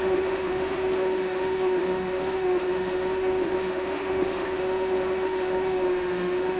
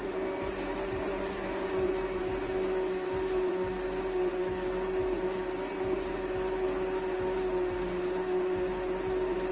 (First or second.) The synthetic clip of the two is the first